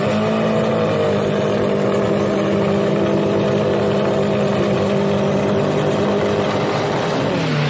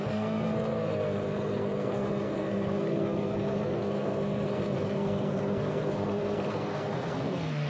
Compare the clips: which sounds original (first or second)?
first